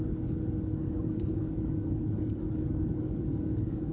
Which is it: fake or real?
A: fake